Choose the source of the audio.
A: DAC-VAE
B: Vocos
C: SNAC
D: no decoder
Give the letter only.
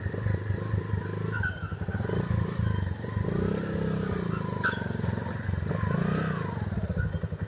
D